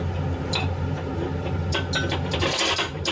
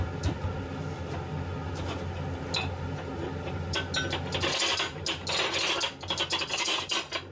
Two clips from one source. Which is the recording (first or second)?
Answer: second